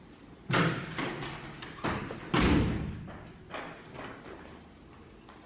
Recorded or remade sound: recorded